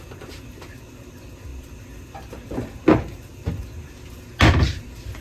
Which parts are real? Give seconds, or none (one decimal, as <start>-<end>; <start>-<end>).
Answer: 0.0-5.2